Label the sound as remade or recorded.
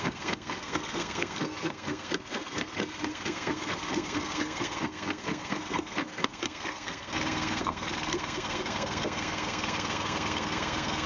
remade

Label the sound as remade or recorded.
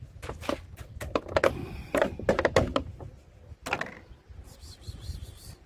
recorded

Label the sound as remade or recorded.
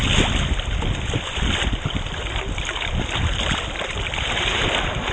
recorded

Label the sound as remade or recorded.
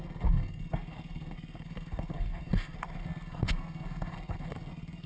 remade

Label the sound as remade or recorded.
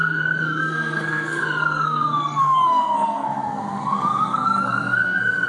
remade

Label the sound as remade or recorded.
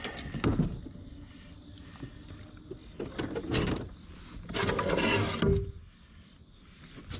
recorded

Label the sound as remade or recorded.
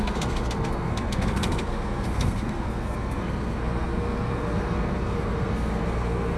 remade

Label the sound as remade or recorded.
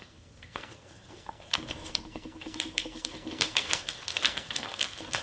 remade